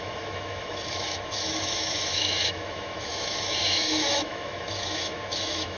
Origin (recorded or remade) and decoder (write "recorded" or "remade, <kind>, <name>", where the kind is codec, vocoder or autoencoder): remade, autoencoder, DAC-VAE